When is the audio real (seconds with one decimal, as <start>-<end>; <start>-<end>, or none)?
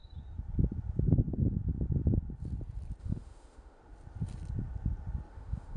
0.0-3.0; 3.8-5.3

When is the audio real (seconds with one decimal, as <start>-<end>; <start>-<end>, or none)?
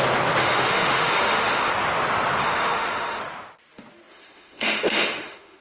0.0-0.4; 1.7-2.4; 3.2-4.1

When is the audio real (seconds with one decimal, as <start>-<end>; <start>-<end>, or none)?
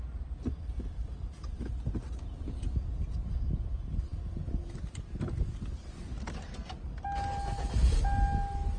0.0-8.8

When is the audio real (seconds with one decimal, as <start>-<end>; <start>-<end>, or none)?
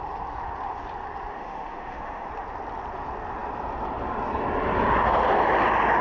0.0-1.3; 2.3-6.0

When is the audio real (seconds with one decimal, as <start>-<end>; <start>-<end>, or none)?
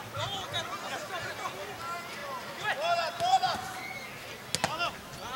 0.0-5.4